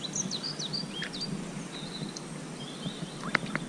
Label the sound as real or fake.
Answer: real